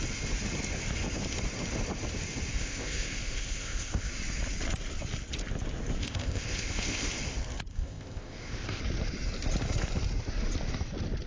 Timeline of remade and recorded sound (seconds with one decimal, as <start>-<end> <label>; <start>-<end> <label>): 0.0-2.5 recorded; 2.5-4.1 remade; 4.1-6.0 recorded; 6.0-7.2 remade; 7.2-7.7 recorded; 7.7-8.8 remade; 8.8-11.3 recorded